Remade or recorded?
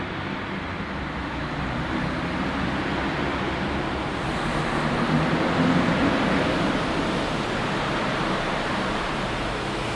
recorded